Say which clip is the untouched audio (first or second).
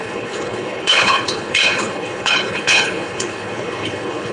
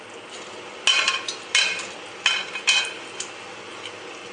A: second